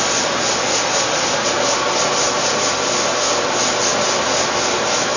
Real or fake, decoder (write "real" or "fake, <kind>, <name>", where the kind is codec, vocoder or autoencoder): real